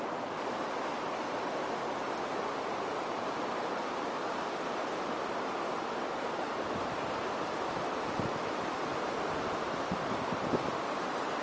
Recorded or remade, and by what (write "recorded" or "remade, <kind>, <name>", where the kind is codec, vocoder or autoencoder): recorded